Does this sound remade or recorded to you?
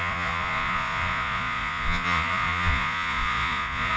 remade